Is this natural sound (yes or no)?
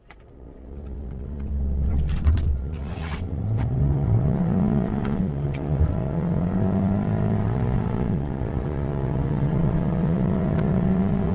no